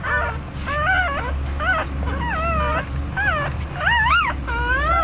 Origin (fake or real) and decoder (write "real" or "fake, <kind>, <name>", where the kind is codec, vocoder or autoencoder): real